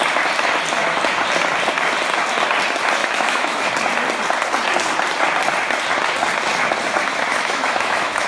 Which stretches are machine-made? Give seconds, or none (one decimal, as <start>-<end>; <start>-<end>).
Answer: 3.0-3.7; 7.3-8.3